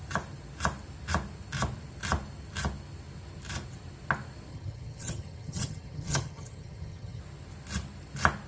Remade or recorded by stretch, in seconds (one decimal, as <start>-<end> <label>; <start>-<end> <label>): 0.0-4.5 recorded; 4.5-7.2 remade; 7.2-8.5 recorded